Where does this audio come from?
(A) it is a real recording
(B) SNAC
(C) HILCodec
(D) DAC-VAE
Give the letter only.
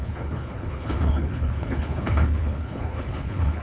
C